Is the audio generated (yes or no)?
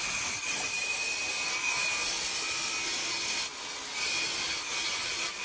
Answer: no